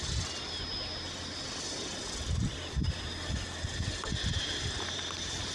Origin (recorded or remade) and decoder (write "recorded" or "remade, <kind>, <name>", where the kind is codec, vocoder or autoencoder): recorded